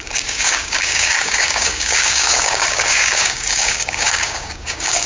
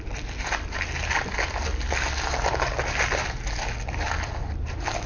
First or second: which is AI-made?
first